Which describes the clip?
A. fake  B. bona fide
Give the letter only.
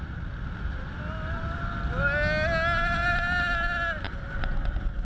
B